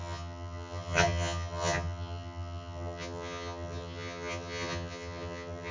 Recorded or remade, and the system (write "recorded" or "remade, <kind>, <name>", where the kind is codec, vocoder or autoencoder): remade, vocoder, HiFi-GAN